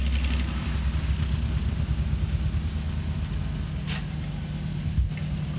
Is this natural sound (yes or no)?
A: yes